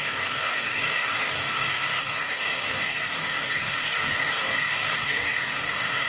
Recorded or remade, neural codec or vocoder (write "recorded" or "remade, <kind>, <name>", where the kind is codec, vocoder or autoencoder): remade, codec, DAC